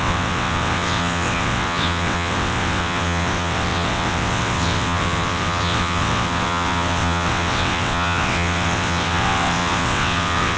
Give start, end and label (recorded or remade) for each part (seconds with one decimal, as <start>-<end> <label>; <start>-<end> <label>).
0.0-10.6 remade